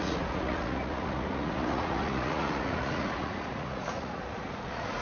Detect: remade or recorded remade